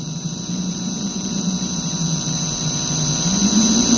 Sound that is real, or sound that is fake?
fake